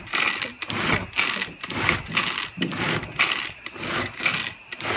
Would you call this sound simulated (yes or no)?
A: no